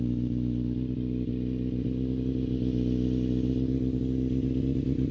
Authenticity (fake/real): real